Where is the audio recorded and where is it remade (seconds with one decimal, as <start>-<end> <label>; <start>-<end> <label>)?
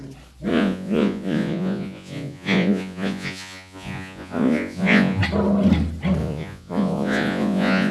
0.0-0.5 recorded; 0.5-5.2 remade; 5.2-6.2 recorded; 6.2-7.9 remade